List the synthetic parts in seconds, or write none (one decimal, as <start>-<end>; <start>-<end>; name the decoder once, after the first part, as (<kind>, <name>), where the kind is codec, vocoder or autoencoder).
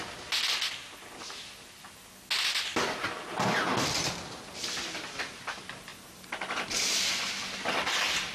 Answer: 3.6-5.9 (vocoder, BigVGAN v2); 6.8-8.3